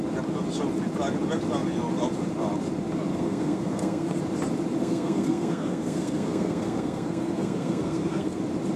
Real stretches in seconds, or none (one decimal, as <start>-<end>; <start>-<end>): 0.0-3.1; 4.2-4.8; 8.4-8.8

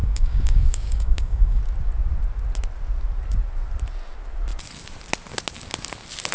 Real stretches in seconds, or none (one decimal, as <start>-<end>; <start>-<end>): 1.6-6.3

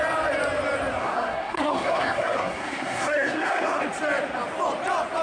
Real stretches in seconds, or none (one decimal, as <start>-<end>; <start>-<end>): 0.0-1.0; 3.8-5.2

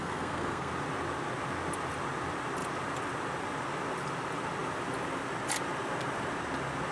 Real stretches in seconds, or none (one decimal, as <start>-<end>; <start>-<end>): 0.7-6.9

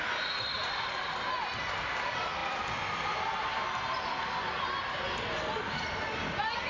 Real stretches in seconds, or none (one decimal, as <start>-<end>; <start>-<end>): 0.0-6.7

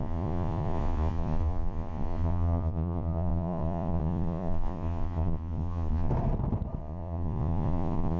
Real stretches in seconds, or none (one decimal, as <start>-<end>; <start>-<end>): 6.1-6.8

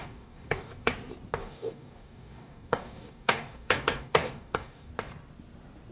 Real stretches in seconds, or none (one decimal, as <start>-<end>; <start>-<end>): 0.9-1.4; 4.9-5.9